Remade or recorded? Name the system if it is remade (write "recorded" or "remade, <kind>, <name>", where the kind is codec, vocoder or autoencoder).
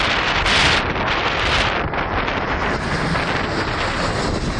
recorded